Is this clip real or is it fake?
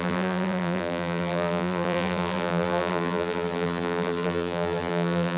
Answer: fake